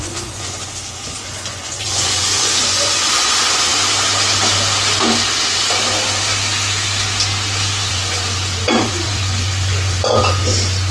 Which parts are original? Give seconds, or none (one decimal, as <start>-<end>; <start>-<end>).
3.7-7.9

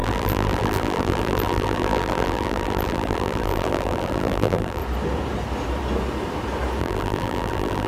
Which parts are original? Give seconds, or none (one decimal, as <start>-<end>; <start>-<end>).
4.8-6.8